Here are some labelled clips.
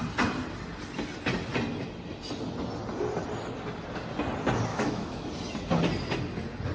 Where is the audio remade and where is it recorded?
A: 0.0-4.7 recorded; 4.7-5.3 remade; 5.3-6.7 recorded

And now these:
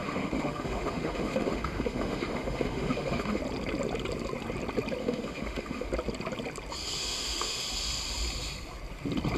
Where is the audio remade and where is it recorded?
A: 0.0-3.4 remade; 3.4-5.0 recorded; 5.0-5.9 remade; 5.9-7.0 recorded; 7.0-7.6 remade; 7.6-9.4 recorded

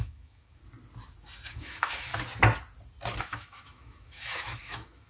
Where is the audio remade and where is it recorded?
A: 0.0-0.6 remade; 0.6-1.5 recorded; 1.5-2.1 remade; 2.1-3.2 recorded; 3.2-5.1 remade